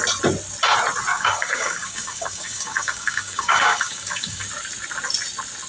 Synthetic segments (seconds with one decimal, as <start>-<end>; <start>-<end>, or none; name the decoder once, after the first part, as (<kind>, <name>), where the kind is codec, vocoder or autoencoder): 1.1-4.5 (codec, DAC)